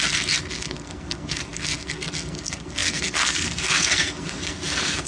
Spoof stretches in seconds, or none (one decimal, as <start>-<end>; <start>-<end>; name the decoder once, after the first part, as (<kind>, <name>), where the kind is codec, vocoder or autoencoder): 0.0-5.1 (codec, SNAC)